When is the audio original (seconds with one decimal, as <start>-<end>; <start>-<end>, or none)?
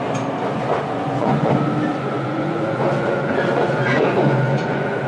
0.0-0.7; 1.5-1.9